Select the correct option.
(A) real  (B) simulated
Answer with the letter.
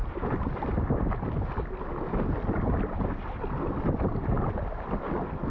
A